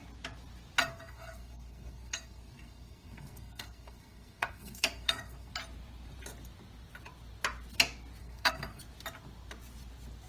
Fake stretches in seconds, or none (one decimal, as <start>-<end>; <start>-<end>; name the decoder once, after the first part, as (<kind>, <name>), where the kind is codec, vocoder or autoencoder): 0.8-5.5 (codec, SNAC); 8.2-8.8